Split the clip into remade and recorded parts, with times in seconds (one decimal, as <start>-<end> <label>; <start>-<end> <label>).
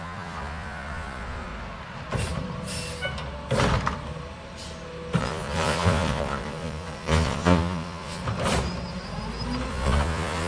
0.0-1.5 remade; 1.5-5.2 recorded; 5.2-8.2 remade; 8.2-9.7 recorded; 9.7-10.5 remade